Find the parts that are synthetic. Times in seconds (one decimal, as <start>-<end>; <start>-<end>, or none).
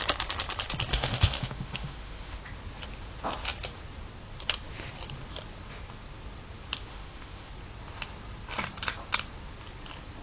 0.9-2.4; 6.9-7.5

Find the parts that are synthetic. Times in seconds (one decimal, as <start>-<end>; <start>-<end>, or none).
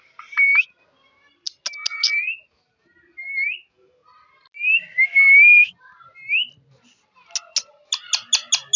none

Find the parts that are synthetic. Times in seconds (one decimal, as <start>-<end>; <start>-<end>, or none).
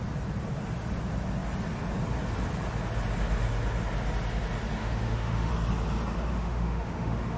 4.8-5.5; 6.3-7.4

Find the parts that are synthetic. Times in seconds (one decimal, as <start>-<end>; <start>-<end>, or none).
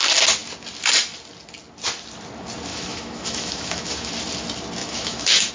2.7-4.1; 4.8-5.5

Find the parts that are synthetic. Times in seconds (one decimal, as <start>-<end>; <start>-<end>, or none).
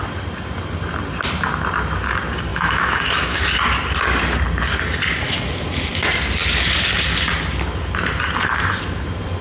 2.5-3.4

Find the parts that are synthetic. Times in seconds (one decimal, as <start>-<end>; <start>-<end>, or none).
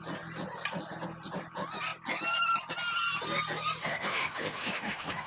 3.8-5.3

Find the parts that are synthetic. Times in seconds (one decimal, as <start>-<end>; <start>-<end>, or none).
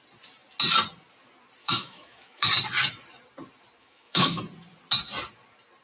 1.6-2.5; 3.8-4.4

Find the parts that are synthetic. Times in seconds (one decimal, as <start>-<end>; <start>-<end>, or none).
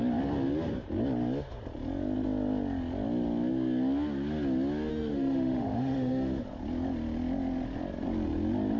4.9-6.4